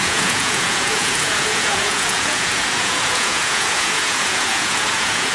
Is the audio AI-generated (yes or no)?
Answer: yes